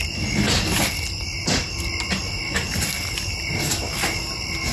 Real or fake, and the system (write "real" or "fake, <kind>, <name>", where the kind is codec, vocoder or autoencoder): real